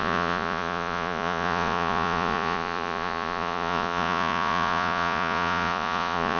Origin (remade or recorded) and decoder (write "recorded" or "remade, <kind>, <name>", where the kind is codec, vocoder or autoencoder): remade, vocoder, Vocos